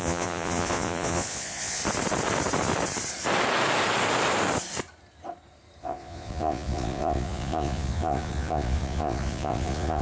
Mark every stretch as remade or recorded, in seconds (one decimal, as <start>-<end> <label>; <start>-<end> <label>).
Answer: 0.0-1.8 remade; 1.8-5.8 recorded; 5.8-10.0 remade